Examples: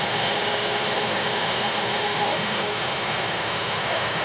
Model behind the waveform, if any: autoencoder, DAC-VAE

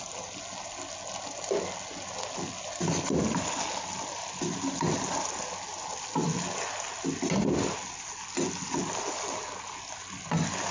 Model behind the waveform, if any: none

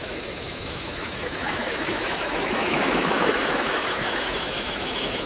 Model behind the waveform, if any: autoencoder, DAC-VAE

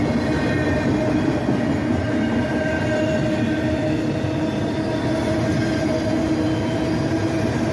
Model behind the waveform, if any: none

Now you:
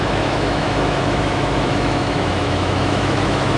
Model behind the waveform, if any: autoencoder, DAC-VAE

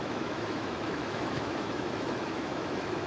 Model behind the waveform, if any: autoencoder, DAC-VAE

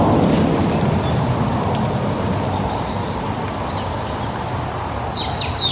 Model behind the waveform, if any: none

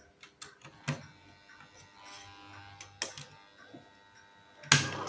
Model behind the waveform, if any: none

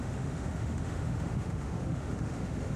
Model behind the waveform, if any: autoencoder, DAC-VAE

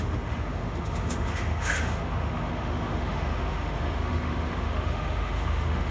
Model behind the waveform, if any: autoencoder, DAC-VAE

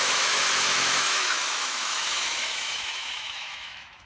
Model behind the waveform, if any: autoencoder, DAC-VAE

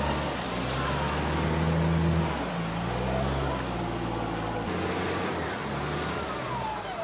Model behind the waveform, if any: none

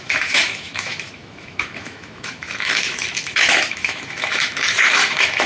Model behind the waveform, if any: autoencoder, DAC-VAE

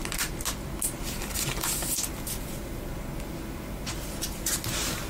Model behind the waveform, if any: none